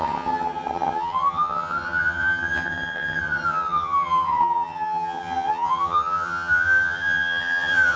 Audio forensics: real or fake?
fake